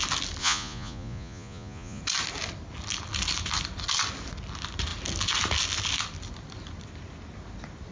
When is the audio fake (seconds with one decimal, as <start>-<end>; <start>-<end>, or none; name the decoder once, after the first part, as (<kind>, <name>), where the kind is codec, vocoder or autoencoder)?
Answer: 0.4-2.0 (vocoder, Vocos)